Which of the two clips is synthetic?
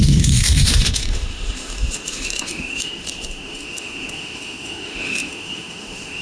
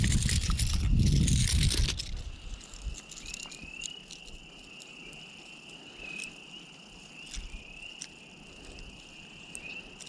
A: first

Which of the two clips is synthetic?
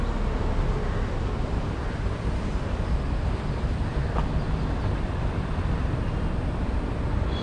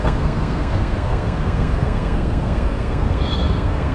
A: second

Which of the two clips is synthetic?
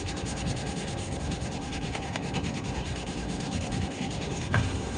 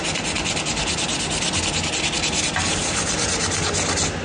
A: first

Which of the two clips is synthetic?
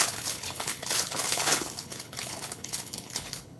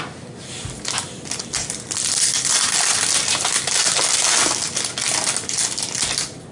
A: first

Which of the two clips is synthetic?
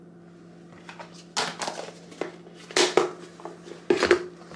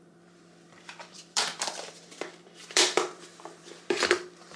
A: second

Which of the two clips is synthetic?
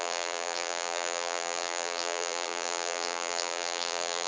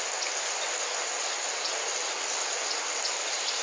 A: first